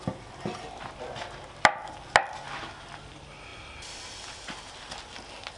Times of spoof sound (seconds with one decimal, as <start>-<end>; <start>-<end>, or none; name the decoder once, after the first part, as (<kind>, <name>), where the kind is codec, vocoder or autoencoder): none